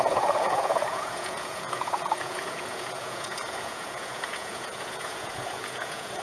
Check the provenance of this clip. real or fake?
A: fake